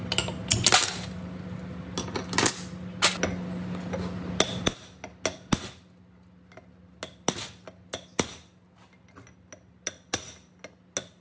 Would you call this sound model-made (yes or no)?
no